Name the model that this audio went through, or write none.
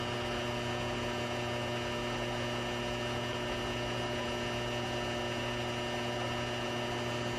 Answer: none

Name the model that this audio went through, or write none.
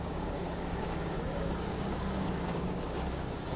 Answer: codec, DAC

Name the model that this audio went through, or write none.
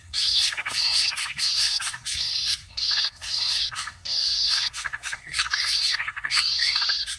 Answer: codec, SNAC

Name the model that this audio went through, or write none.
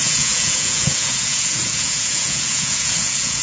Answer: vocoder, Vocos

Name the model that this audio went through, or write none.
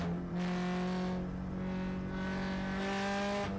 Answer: none